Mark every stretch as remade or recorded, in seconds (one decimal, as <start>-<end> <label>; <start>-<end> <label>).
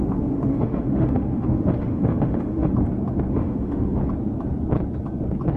0.0-2.7 remade; 2.7-3.3 recorded; 3.3-4.0 remade; 4.0-5.6 recorded